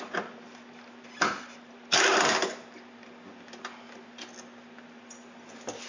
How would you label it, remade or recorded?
recorded